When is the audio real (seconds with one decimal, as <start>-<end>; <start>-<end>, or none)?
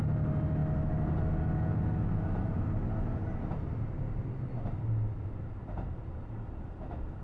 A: 0.0-7.2